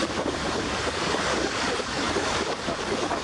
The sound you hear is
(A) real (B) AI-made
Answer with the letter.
B